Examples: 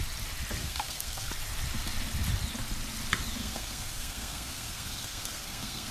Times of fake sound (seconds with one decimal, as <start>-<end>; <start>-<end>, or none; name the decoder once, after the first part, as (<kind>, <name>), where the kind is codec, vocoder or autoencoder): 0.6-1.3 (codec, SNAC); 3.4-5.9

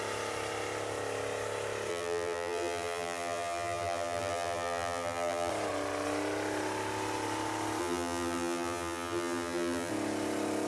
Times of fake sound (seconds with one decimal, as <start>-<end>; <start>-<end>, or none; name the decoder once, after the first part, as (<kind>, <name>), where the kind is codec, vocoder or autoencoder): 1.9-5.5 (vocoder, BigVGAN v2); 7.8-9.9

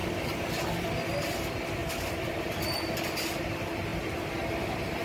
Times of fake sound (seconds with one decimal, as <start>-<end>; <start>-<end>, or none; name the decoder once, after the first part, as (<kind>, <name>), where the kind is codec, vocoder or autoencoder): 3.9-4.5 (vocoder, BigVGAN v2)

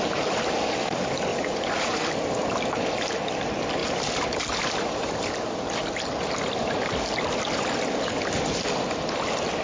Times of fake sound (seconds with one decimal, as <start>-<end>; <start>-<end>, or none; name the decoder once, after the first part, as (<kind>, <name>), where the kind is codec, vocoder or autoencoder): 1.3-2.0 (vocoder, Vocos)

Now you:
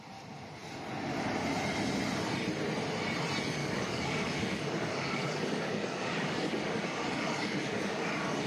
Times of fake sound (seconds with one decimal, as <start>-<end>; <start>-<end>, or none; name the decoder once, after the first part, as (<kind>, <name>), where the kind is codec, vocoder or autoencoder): 3.6-8.5 (codec, DAC)

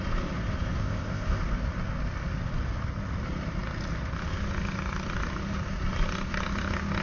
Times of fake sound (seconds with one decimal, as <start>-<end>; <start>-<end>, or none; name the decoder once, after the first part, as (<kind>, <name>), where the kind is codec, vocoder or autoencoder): 0.8-1.4 (codec, ZipCodec)

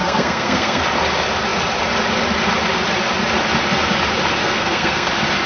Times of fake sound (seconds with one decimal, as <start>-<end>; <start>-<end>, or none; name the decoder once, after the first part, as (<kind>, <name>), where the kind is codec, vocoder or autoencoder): 0.0-0.8 (codec, SNAC); 4.4-5.1